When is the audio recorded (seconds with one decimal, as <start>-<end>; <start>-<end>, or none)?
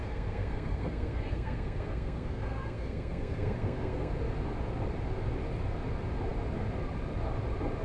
4.1-7.8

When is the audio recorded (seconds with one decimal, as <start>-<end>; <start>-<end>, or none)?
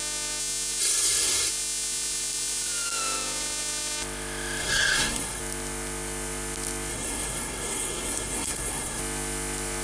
0.0-0.8; 1.5-4.6; 5.4-6.9; 9.0-9.8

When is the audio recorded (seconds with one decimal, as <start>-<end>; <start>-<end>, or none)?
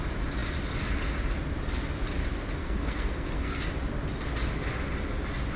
0.0-2.6; 3.7-5.6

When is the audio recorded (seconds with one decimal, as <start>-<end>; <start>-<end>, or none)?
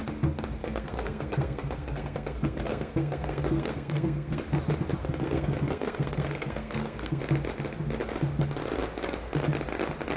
0.0-0.6; 4.4-5.0; 7.2-10.2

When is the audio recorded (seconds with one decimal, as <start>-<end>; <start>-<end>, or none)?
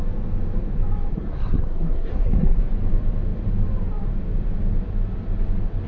0.0-1.1; 2.6-5.9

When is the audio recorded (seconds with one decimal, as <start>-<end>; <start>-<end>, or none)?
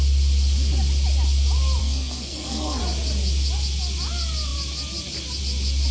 0.0-1.8; 2.8-5.9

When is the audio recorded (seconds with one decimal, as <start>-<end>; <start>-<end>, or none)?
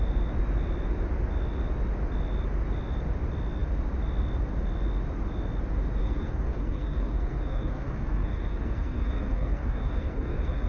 0.0-6.0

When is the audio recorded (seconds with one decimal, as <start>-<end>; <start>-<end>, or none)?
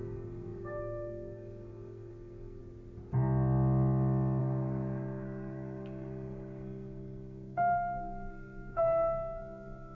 2.6-4.4